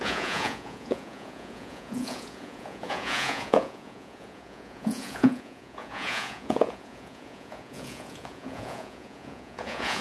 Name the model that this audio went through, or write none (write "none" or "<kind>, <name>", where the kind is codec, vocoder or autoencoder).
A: vocoder, Vocos